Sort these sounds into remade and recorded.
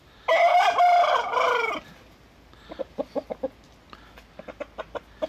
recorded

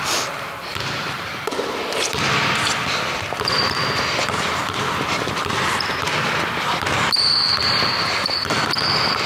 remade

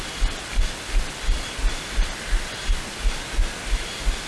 recorded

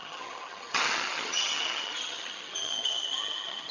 remade